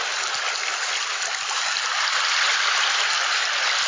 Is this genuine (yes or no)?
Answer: yes